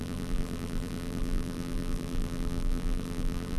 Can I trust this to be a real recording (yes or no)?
no